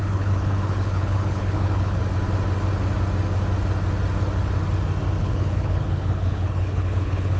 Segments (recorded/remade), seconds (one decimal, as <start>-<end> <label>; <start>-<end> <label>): 0.0-2.0 remade; 2.0-5.2 recorded; 5.2-7.4 remade